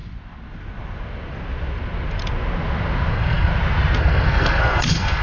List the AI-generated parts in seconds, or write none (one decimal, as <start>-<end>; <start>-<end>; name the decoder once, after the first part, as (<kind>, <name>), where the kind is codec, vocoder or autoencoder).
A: 3.1-3.5 (codec, SNAC); 4.0-5.2